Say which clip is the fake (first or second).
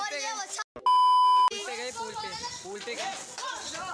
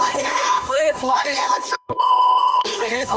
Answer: second